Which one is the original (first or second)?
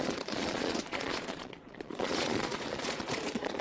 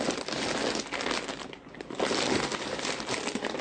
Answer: second